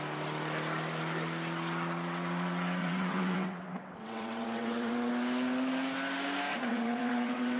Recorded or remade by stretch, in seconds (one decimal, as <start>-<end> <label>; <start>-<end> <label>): 0.0-2.8 recorded; 2.8-5.1 remade; 5.1-6.5 recorded; 6.5-7.6 remade